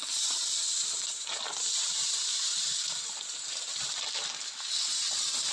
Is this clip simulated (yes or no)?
no